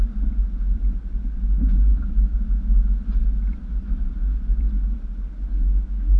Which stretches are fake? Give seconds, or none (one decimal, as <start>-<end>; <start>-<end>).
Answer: none

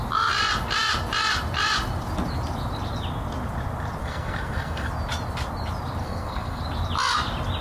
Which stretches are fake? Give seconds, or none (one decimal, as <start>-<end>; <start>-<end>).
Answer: 4.0-4.9; 6.0-6.6

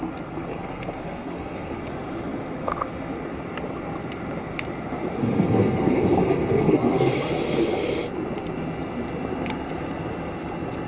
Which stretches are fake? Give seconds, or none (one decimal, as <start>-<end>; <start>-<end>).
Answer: 0.5-1.8; 5.2-7.1

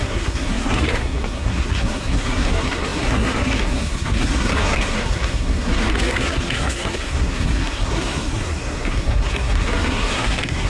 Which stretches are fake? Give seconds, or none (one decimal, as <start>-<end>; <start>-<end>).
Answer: 0.0-10.7

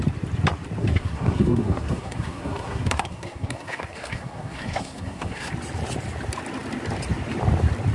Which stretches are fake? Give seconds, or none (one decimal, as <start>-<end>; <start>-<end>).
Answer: 0.8-5.5

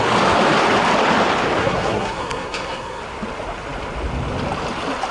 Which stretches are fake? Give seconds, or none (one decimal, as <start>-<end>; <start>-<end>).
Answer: 1.6-3.0

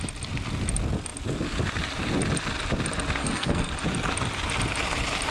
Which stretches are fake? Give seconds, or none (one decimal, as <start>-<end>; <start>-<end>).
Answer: 3.2-3.7